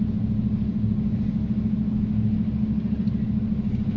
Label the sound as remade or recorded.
recorded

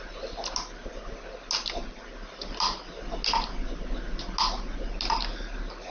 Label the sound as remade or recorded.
recorded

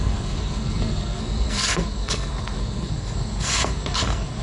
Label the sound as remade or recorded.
remade